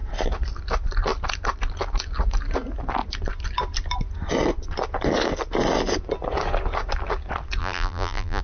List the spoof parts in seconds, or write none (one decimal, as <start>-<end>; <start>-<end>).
7.6-8.4